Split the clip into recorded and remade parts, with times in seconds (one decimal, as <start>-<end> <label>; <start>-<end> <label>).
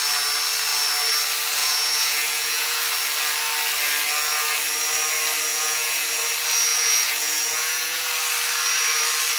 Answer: 0.0-1.6 recorded; 1.6-2.8 remade; 2.8-5.5 recorded; 5.5-6.2 remade; 6.2-6.7 recorded; 6.7-8.1 remade; 8.1-9.4 recorded